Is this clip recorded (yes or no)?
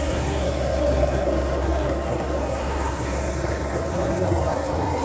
no